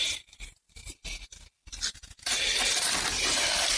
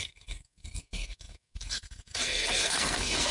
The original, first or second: first